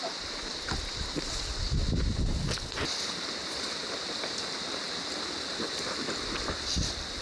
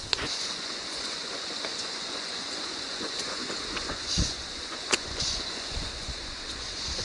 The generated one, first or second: second